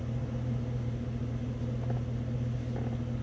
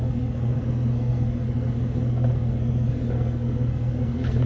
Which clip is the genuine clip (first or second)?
first